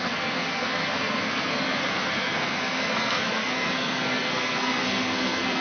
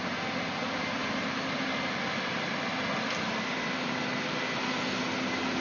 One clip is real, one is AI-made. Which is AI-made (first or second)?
first